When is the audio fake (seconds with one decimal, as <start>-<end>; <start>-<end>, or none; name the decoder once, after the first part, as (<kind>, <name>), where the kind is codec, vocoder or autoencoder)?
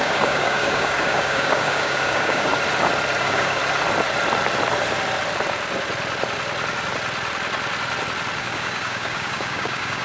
0.0-2.5 (codec, DAC); 3.2-3.6; 8.4-10.0